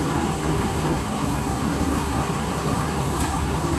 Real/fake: fake